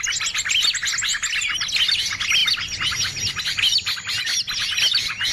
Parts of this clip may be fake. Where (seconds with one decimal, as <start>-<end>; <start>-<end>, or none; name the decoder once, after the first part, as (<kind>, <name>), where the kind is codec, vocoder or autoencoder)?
none